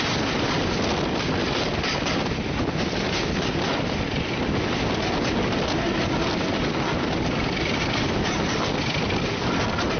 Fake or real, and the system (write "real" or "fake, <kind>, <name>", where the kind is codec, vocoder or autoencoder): real